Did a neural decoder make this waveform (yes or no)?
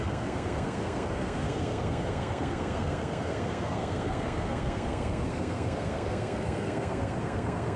yes